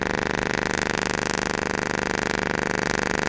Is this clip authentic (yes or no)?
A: yes